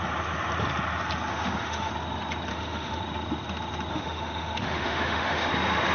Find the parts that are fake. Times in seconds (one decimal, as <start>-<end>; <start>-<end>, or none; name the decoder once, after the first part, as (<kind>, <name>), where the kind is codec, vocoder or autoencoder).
1.3-1.9 (autoencoder, DAC-VAE); 2.5-3.0; 3.9-5.5